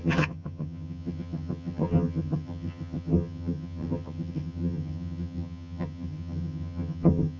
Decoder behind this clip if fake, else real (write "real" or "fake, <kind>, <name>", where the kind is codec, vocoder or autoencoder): fake, vocoder, HiFi-GAN